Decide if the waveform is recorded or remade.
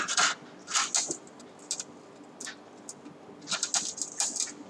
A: recorded